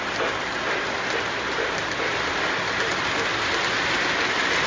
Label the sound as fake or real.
real